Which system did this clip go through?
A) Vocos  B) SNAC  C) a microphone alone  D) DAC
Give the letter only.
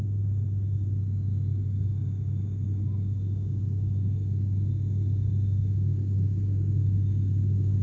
D